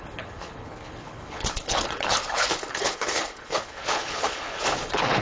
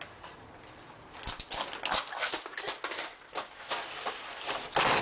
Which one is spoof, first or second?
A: first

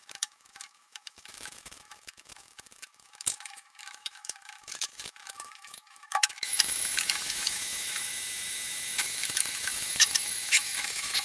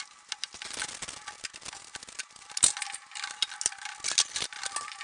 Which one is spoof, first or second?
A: first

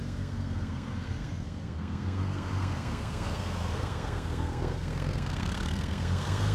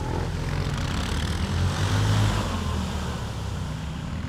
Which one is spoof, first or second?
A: first